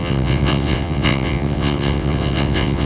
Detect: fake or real fake